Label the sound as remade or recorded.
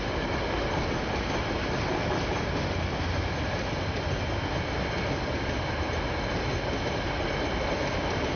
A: recorded